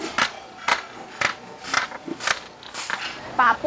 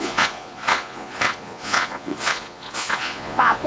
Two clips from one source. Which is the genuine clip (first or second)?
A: first